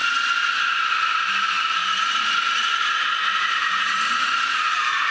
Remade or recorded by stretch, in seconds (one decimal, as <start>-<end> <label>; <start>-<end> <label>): 0.0-5.1 recorded

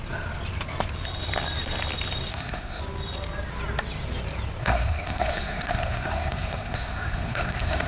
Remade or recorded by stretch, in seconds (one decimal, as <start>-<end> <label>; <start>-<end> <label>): 0.0-2.3 recorded; 2.3-2.8 remade; 2.8-4.6 recorded; 4.6-7.9 remade

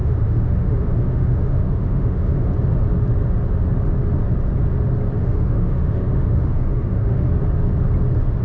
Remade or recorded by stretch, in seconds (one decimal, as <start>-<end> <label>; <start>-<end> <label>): 0.0-2.5 remade; 2.5-5.2 recorded; 5.2-7.3 remade; 7.3-8.4 recorded

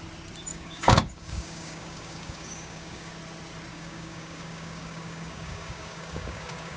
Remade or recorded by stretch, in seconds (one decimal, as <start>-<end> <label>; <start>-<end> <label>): 0.0-0.5 recorded; 0.5-3.1 remade; 3.1-3.7 recorded; 3.7-6.8 remade

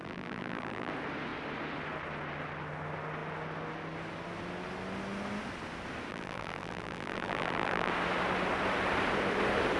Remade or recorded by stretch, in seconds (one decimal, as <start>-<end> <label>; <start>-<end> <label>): 0.0-0.9 remade; 0.9-6.1 recorded; 6.1-7.9 remade; 7.9-9.8 recorded

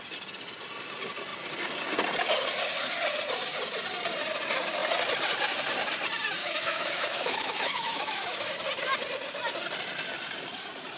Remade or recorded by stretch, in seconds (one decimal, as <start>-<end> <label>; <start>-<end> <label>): 0.0-6.4 recorded; 6.4-8.5 remade; 8.5-11.0 recorded

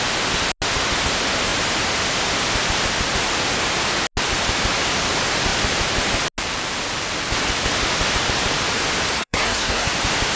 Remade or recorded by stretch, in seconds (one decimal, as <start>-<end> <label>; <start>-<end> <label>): 0.0-9.1 recorded; 9.1-9.9 remade; 9.9-10.4 recorded